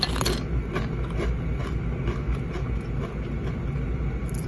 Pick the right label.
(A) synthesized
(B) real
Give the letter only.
B